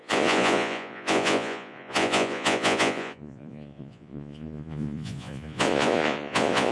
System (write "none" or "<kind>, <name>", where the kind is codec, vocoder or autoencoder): vocoder, Vocos